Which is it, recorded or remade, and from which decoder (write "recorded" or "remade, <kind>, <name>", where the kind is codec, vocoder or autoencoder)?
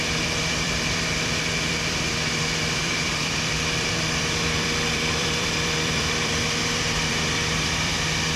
remade, vocoder, BigVGAN v2